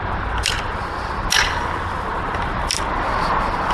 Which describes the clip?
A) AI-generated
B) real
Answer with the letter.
B